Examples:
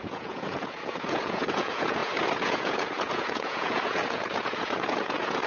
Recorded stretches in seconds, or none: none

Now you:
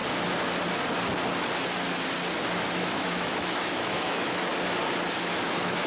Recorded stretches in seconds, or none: 0.0-2.8; 4.5-5.2

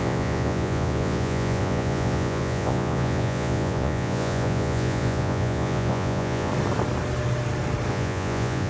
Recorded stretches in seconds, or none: 6.5-7.9

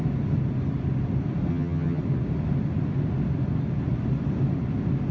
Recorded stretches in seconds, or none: 0.0-1.5; 2.0-5.1

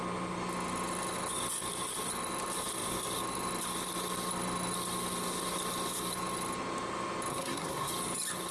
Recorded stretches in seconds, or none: 0.0-7.3; 7.9-8.5

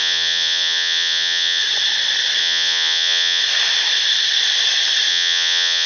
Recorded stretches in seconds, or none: 1.6-2.4; 3.4-5.1

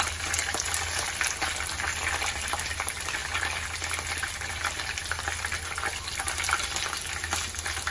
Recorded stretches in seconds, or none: 0.0-7.9

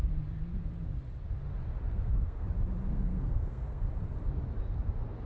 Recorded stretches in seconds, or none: 0.0-1.9; 2.5-2.9; 3.9-5.2